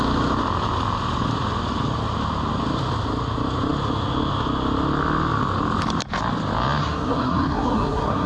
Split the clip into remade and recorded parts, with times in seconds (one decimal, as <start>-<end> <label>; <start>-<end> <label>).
0.0-6.8 recorded; 6.8-8.3 remade